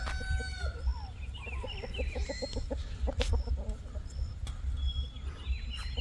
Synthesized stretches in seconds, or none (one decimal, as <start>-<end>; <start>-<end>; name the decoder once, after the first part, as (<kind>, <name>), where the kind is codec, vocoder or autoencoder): none